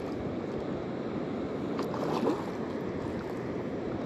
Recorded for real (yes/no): yes